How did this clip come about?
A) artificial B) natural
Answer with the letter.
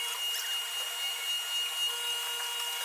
B